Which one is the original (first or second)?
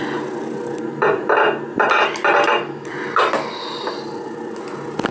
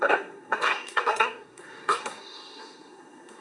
first